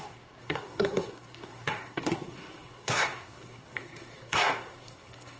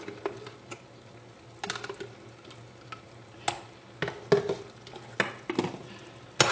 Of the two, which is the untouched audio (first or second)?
second